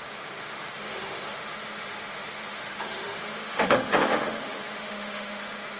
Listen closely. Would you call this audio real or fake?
fake